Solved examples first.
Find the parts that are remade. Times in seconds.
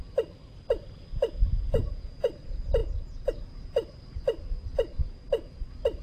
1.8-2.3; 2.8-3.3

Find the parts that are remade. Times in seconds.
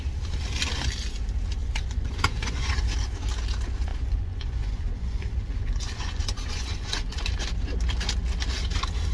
1.6-2.8; 3.9-7.2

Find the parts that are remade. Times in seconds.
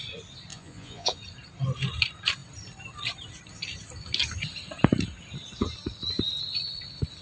0.5-1.2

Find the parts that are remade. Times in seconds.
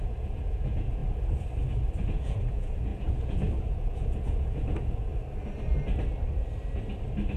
0.0-1.0; 2.0-5.1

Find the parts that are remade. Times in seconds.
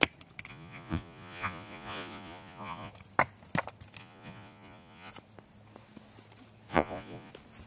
0.5-2.9; 4.0-5.1; 6.7-7.3